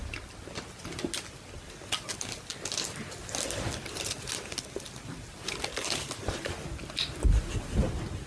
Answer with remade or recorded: recorded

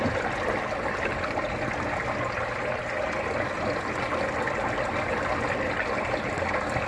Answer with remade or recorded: recorded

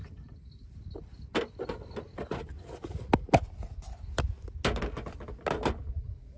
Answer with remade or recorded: recorded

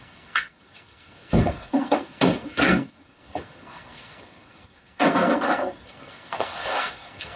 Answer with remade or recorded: remade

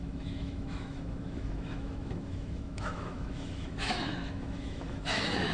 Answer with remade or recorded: remade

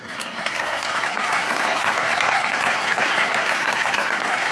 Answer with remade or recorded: remade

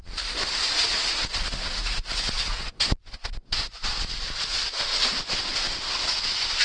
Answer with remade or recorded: recorded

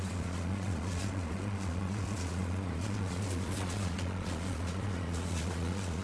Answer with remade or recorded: remade